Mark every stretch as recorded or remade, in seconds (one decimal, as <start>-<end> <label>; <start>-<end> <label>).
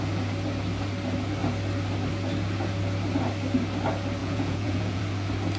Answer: 0.0-4.2 recorded; 4.2-5.0 remade; 5.0-5.6 recorded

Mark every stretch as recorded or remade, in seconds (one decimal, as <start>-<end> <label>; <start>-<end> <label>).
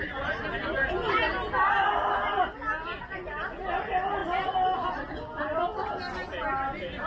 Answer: 0.0-7.1 recorded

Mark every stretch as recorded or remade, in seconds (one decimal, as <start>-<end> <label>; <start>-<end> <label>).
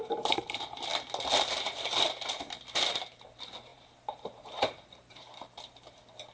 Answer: 0.0-0.9 remade; 0.9-1.4 recorded; 1.4-6.3 remade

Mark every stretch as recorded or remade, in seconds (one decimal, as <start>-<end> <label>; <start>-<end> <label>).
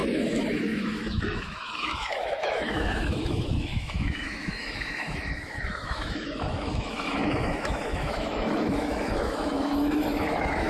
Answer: 0.0-10.7 remade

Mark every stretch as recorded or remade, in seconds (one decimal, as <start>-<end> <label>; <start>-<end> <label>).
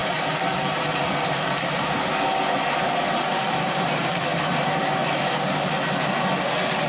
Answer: 0.0-3.3 recorded; 3.3-4.0 remade; 4.0-6.9 recorded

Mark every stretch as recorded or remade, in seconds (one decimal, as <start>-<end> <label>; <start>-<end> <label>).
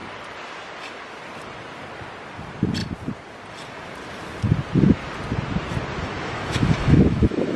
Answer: 0.0-6.0 recorded; 6.0-7.6 remade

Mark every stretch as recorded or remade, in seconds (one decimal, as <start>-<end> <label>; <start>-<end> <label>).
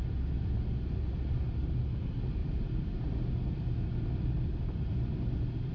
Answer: 0.0-2.4 recorded; 2.4-3.0 remade; 3.0-5.7 recorded